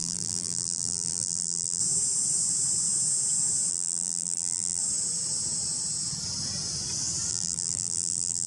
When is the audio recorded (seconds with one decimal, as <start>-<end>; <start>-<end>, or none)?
1.8-3.7; 4.8-7.3